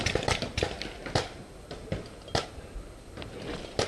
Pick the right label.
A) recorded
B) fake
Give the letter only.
A